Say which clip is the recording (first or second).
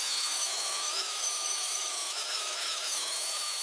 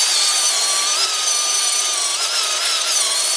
second